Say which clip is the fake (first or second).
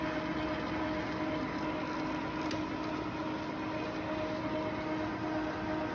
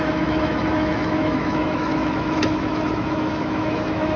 second